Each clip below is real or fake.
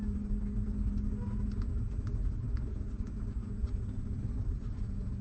real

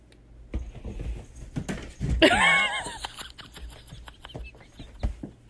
real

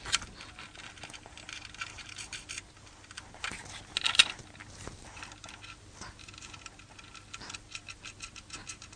real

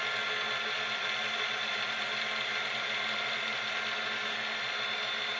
real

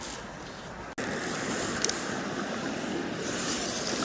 real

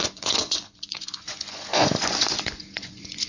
fake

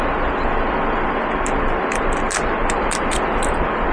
real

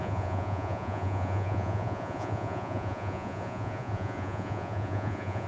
fake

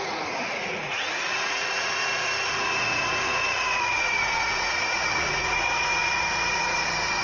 fake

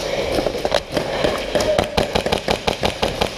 real